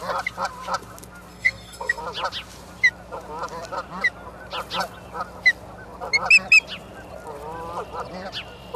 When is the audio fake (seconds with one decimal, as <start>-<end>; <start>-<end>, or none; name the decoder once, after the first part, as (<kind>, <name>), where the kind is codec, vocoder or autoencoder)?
1.3-2.0 (codec, SNAC)